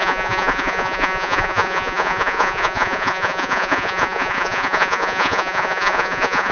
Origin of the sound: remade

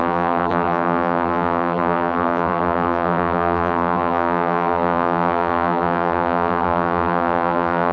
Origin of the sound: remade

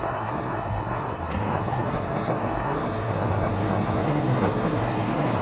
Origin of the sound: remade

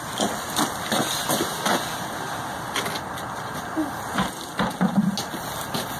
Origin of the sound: recorded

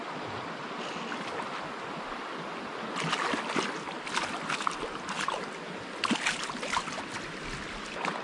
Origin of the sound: recorded